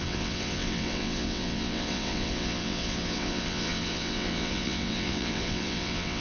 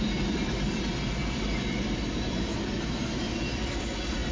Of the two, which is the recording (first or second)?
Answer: second